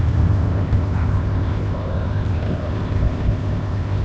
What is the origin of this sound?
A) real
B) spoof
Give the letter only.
B